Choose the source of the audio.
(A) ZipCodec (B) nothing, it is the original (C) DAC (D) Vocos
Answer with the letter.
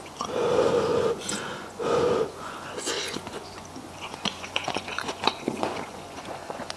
D